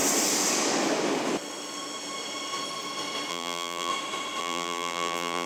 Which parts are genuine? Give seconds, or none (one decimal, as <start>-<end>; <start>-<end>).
0.0-3.3; 3.9-4.4